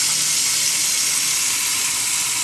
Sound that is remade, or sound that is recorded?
recorded